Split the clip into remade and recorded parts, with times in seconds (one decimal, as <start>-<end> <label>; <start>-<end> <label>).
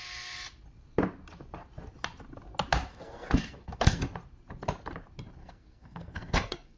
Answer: 0.0-2.9 recorded; 2.9-4.0 remade; 4.0-5.4 recorded; 5.4-6.8 remade